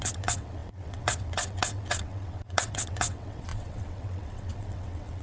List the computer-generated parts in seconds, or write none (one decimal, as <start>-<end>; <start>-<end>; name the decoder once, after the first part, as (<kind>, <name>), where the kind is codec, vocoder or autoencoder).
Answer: 0.0-5.2 (vocoder, WaveNeXt)